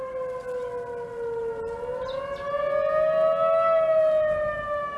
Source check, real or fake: real